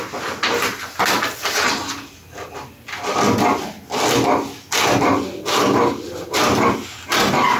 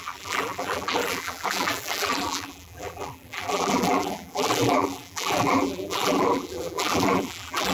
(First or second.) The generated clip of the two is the second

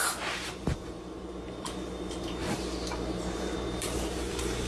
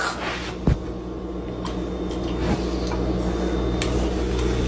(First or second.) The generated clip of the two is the first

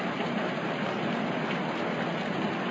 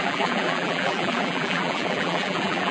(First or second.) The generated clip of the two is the second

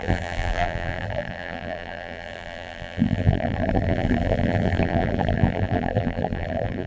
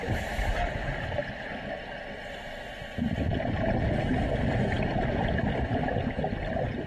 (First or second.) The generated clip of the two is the first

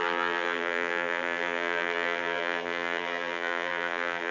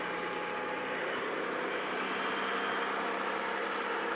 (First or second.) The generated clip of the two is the first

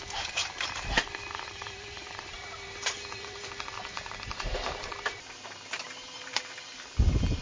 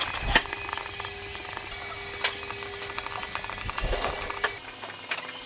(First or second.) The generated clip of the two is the first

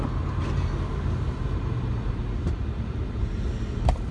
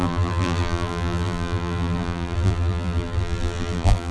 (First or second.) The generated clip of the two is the second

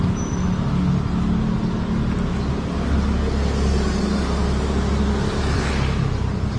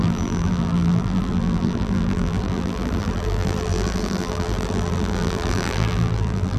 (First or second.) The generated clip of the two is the second